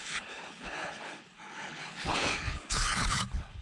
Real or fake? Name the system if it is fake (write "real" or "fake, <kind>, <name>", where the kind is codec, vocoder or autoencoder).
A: fake, codec, HILCodec